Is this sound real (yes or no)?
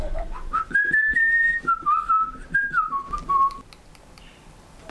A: yes